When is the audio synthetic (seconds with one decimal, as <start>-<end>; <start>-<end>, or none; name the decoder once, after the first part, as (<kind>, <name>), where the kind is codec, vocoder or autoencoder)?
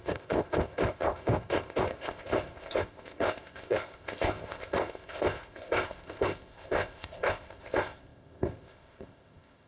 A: 0.0-9.7 (codec, ZipCodec)